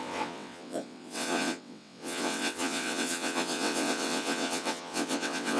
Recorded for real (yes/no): no